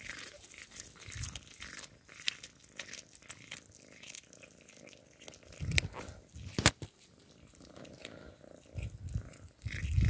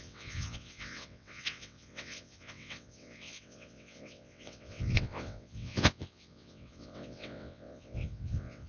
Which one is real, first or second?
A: first